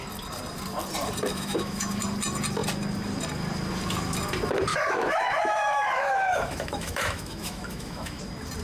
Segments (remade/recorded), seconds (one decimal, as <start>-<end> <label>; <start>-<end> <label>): 0.0-1.3 recorded; 1.3-2.0 remade; 2.0-4.7 recorded; 4.7-8.2 remade; 8.2-8.6 recorded